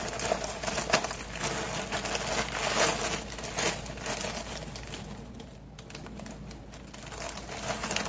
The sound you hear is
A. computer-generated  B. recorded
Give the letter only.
B